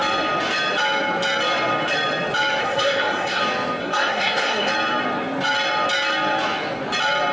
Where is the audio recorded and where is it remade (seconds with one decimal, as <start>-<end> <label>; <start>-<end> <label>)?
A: 0.0-2.6 recorded; 2.6-3.4 remade; 3.4-3.8 recorded; 3.8-4.7 remade; 4.7-7.3 recorded